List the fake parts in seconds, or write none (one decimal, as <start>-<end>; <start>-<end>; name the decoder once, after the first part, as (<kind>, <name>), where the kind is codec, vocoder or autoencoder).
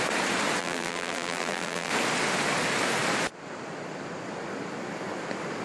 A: 0.6-1.9 (vocoder, BigVGAN v2)